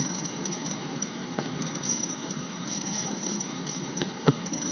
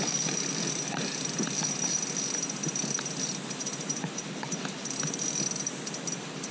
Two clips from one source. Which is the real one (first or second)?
second